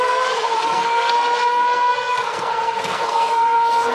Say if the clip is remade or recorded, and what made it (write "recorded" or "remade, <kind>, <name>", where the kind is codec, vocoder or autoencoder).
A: remade, codec, SNAC